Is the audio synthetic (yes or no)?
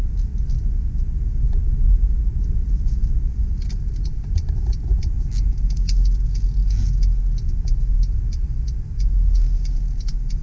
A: no